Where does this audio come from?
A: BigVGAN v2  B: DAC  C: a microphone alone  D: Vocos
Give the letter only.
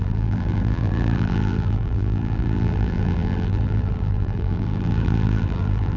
A